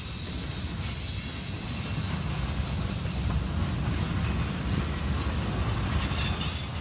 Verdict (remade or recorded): recorded